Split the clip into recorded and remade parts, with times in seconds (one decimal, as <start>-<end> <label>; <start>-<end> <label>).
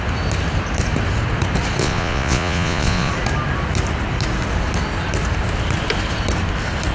0.0-1.8 recorded; 1.8-3.1 remade; 3.1-6.9 recorded